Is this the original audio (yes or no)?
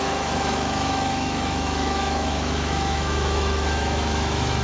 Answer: no